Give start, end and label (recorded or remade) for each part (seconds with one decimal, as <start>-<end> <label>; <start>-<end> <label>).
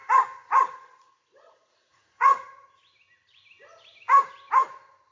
0.0-0.5 recorded; 0.5-2.8 remade; 2.8-5.1 recorded